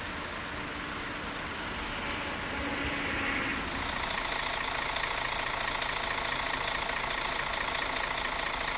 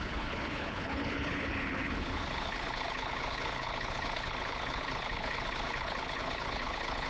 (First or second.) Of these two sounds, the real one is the first